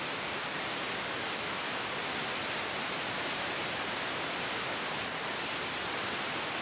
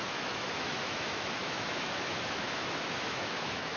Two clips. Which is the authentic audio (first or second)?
first